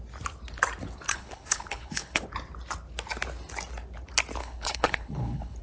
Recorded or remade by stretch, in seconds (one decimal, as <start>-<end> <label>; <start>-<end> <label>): 0.0-1.1 recorded; 1.1-2.2 remade; 2.2-4.4 recorded; 4.4-5.6 remade